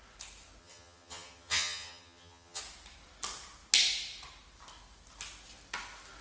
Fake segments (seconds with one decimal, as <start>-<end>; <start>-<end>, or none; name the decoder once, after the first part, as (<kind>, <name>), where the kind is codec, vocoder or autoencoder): 0.6-2.6 (vocoder, HiFi-GAN)